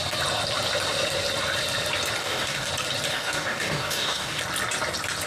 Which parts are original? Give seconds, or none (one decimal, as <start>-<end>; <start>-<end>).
0.0-2.2; 2.7-3.1; 4.4-5.3